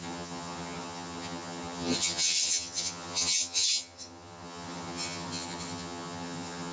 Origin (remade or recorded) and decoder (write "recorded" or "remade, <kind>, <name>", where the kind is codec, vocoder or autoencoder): remade, vocoder, HiFi-GAN